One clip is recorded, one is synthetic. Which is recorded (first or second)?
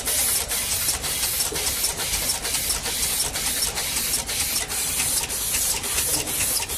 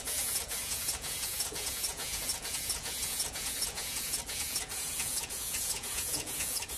first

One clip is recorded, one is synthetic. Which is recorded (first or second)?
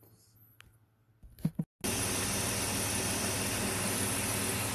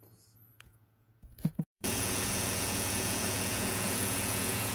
first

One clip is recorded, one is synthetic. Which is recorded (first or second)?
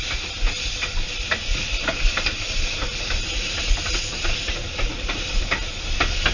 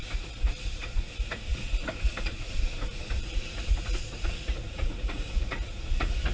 first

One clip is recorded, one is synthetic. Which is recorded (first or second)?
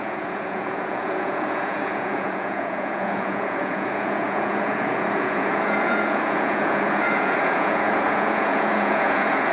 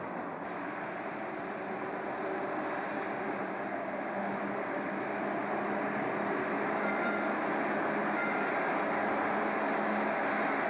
second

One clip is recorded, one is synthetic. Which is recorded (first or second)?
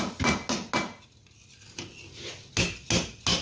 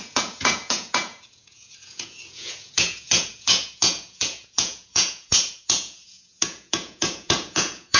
first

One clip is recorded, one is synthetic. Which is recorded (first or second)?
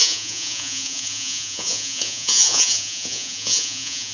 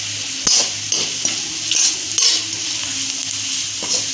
second